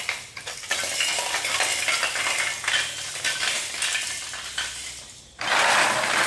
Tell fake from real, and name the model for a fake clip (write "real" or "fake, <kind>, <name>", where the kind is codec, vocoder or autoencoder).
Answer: real